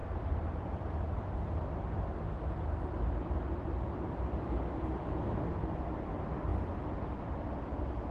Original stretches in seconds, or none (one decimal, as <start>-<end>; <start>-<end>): 0.0-8.1